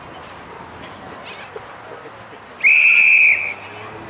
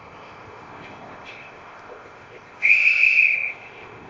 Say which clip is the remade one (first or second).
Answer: second